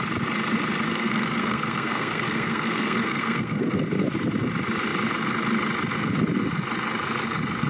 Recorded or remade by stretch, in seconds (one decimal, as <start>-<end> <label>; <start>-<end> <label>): 0.0-0.9 recorded; 0.9-3.8 remade; 3.8-7.7 recorded

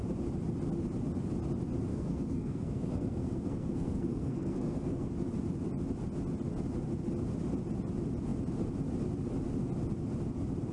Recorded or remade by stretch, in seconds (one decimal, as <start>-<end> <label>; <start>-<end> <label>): 0.0-1.9 recorded; 1.9-5.1 remade; 5.1-10.7 recorded

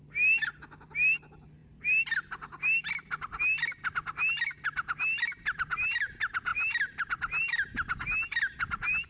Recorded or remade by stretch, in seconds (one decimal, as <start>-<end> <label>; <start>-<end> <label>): 0.0-9.1 recorded

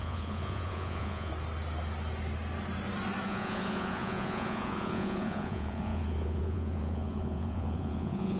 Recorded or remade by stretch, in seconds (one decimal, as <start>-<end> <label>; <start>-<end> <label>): 0.0-1.3 remade; 1.3-3.3 recorded; 3.3-8.4 remade

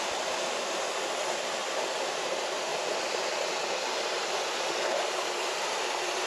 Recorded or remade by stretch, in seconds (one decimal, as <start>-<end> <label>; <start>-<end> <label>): 0.0-1.6 recorded; 1.6-2.1 remade; 2.1-2.7 recorded; 2.7-5.7 remade; 5.7-6.3 recorded